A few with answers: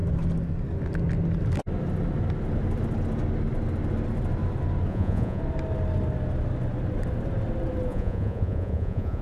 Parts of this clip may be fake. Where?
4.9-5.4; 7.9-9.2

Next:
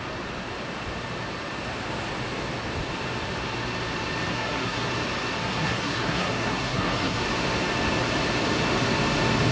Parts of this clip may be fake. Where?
4.3-4.9; 5.4-7.2

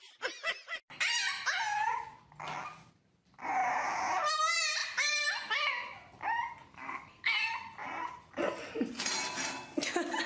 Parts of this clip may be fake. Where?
6.7-7.3